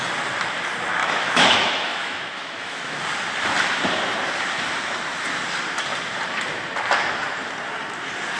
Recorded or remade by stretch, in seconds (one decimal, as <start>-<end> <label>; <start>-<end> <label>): 0.0-1.0 recorded; 1.0-3.0 remade; 3.0-8.4 recorded